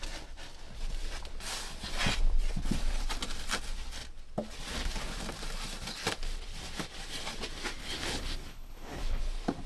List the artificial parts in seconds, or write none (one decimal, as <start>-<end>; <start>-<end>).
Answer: 7.8-9.2